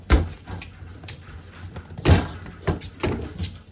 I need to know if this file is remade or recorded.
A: recorded